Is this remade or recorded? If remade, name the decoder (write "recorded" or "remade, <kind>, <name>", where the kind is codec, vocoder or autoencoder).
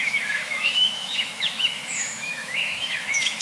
remade, autoencoder, DAC-VAE